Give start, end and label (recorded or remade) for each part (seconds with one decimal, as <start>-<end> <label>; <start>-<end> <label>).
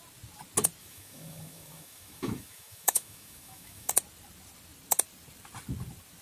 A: 0.0-0.8 recorded; 0.8-3.9 remade; 3.9-6.2 recorded